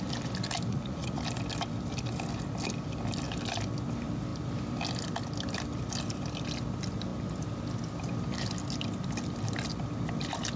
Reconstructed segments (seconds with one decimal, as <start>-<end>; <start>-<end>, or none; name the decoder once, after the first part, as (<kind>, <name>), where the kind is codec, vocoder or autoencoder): 0.7-1.2 (vocoder, Vocos)